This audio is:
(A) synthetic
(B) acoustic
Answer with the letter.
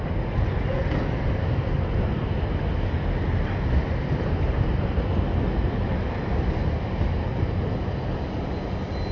B